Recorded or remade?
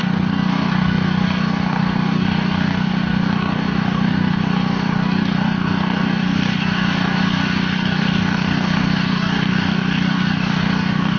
remade